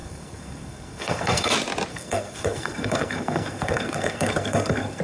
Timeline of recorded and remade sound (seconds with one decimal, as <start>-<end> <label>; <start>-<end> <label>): 0.0-1.5 remade; 1.5-1.9 recorded; 1.9-5.0 remade